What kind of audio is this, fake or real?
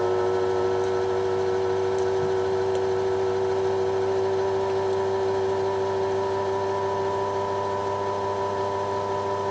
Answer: real